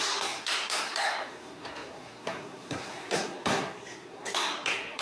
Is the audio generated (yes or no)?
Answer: yes